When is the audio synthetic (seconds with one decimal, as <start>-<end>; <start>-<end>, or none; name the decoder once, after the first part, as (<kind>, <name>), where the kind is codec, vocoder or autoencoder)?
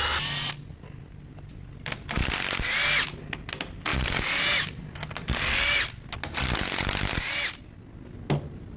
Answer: none